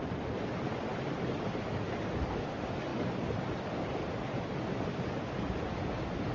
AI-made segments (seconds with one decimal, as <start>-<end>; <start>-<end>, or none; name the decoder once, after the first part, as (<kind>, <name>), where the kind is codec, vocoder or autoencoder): none